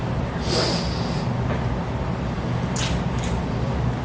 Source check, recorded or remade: recorded